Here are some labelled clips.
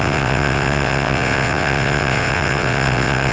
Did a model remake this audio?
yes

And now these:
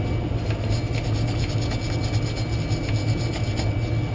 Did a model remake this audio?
no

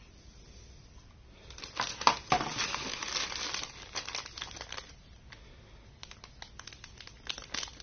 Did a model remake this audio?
no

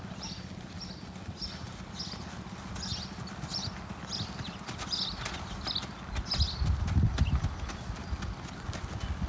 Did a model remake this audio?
no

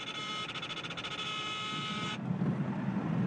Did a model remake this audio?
no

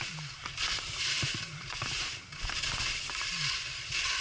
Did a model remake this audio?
no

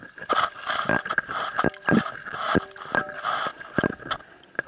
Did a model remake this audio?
no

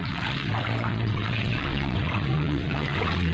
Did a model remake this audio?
yes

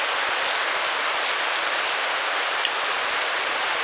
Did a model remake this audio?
no